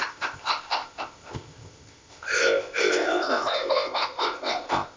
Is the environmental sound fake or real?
fake